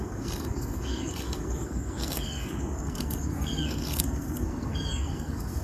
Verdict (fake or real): fake